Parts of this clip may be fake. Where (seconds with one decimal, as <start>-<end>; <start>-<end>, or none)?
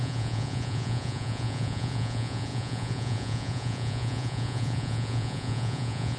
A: 0.0-6.2